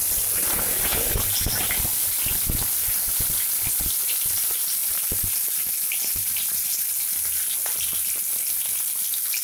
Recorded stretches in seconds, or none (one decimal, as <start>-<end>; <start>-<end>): 0.0-9.4